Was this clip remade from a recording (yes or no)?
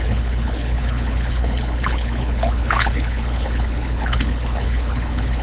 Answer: yes